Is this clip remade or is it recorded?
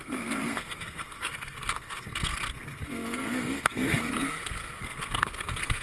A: remade